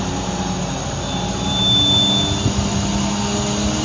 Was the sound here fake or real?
real